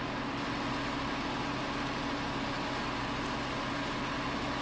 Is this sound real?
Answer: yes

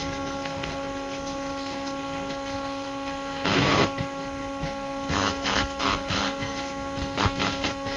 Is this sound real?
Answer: no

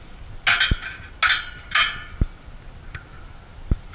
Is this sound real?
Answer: yes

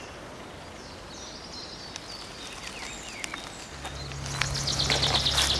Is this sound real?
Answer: yes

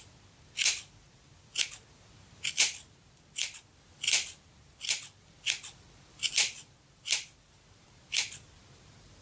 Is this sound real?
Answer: yes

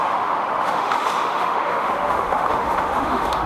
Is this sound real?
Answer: no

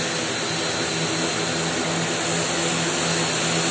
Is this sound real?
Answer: yes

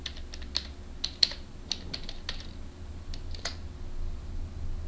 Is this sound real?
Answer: yes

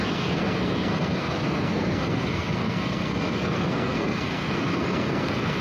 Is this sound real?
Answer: no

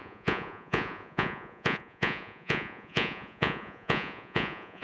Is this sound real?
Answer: no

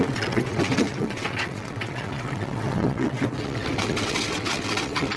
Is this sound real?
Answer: no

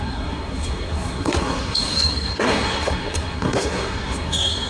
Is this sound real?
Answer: no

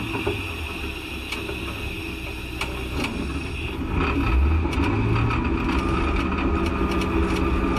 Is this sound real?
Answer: yes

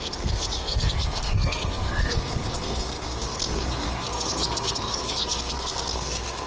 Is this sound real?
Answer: no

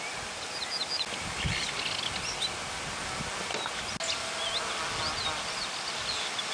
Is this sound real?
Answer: yes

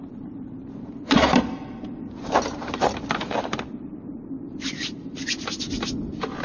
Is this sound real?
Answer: no